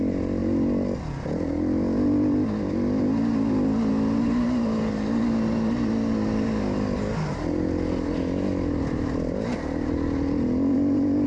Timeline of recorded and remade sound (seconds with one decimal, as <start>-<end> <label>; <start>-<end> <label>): 0.0-11.3 recorded